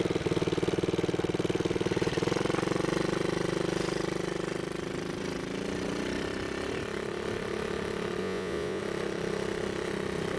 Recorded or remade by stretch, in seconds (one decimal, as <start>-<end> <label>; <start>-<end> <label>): 0.0-8.2 recorded; 8.2-8.8 remade; 8.8-10.4 recorded